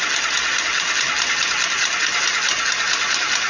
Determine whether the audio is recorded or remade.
recorded